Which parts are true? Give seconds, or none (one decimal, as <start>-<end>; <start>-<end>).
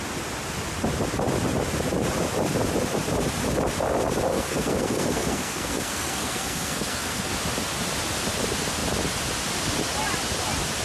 0.0-4.3; 7.3-10.8